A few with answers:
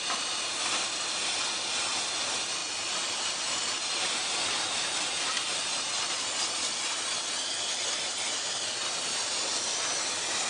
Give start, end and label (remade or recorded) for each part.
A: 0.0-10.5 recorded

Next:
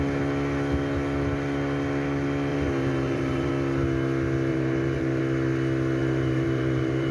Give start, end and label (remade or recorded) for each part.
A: 0.0-2.5 recorded; 2.5-3.5 remade; 3.5-4.5 recorded; 4.5-5.2 remade; 5.2-6.0 recorded; 6.0-7.1 remade